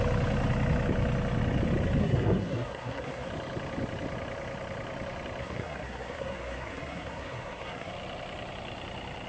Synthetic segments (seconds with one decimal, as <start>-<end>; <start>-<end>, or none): 2.0-3.3; 5.4-7.9